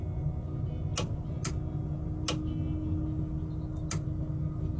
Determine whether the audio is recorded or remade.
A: recorded